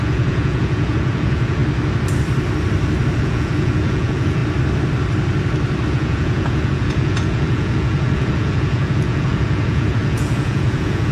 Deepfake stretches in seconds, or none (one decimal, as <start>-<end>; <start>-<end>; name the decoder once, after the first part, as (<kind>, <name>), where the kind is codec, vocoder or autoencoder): 0.0-1.6 (vocoder, Vocos); 3.2-4.4; 5.9-11.1